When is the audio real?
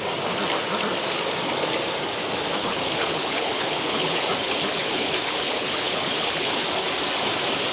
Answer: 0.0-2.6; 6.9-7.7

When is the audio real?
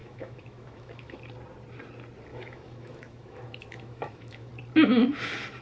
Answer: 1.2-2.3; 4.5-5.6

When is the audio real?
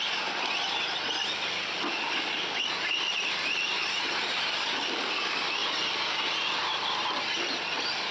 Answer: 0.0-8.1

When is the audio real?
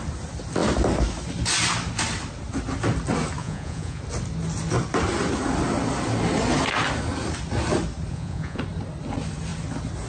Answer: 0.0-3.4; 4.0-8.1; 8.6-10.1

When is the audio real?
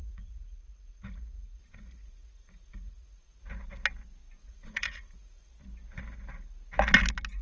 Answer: 3.4-4.4; 5.5-7.4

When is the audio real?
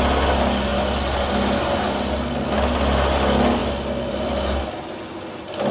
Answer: 0.0-5.7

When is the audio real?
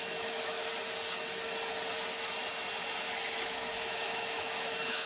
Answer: 0.7-3.4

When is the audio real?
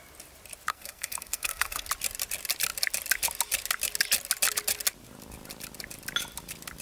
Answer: 0.0-0.7; 1.9-6.8